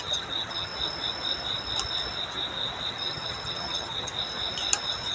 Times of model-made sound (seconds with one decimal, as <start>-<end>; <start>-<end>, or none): 0.0-0.7; 2.9-4.1